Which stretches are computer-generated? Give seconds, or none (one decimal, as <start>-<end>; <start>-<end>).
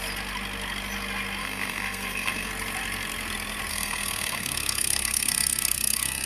1.4-2.5; 3.7-6.3